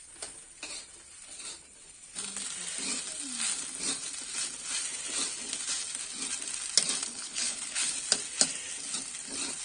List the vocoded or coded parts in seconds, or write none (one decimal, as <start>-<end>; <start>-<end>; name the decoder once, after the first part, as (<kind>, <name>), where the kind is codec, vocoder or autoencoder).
7.0-7.9 (codec, HILCodec)